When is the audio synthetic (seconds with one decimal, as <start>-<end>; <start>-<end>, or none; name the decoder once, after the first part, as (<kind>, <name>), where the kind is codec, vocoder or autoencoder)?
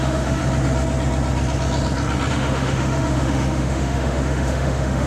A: 0.0-0.4 (autoencoder, DAC-VAE); 2.3-5.1